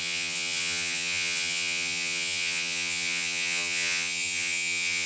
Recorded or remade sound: remade